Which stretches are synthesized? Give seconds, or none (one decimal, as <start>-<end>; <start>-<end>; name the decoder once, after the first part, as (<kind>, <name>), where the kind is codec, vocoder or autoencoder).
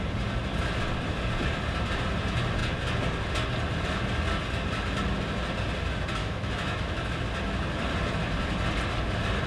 6.2-7.0 (autoencoder, DAC-VAE)